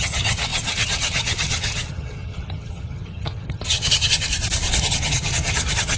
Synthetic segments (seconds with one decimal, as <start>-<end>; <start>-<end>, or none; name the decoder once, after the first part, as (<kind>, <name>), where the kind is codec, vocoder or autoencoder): 0.0-4.3 (vocoder, HiFi-GAN); 4.8-6.0